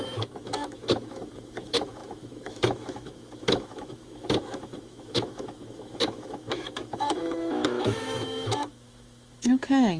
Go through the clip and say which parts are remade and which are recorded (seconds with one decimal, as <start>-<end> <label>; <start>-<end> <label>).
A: 0.0-10.0 remade